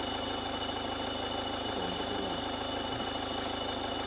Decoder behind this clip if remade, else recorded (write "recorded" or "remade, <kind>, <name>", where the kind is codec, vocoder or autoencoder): recorded